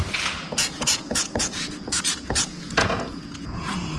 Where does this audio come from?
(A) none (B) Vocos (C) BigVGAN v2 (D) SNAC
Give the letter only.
B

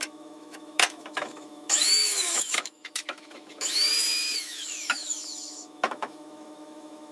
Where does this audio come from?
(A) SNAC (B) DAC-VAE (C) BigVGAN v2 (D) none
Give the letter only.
B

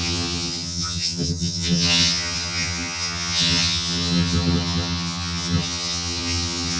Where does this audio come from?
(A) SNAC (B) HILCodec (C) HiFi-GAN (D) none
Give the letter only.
C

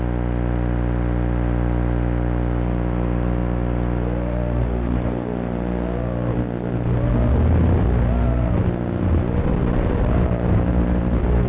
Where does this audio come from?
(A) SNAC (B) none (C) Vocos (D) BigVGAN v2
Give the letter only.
B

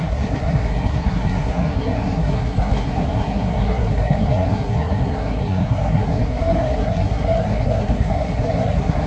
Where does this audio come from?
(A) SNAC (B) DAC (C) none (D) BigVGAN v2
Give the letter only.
A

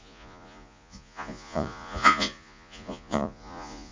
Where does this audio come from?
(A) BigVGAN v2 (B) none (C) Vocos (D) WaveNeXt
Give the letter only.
C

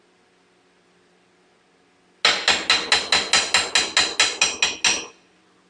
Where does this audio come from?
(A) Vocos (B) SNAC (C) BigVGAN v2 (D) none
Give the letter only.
D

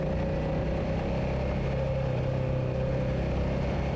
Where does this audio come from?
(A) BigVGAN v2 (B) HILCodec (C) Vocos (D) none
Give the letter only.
D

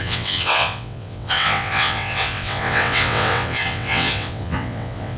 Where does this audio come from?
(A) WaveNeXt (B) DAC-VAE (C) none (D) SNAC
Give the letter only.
A